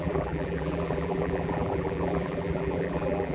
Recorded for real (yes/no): no